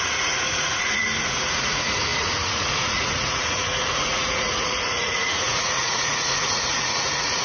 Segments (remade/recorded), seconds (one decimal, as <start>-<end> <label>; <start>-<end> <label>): 0.0-7.4 remade